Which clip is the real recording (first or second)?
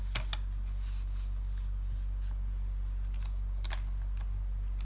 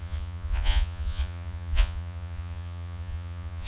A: first